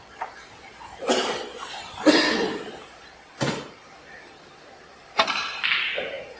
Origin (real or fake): fake